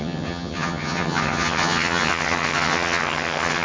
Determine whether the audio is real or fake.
fake